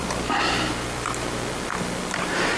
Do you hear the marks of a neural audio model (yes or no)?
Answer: yes